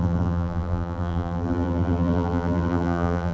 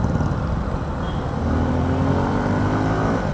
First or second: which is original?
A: second